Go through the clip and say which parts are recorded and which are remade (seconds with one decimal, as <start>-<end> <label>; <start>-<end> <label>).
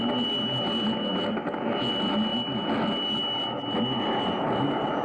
0.0-5.0 recorded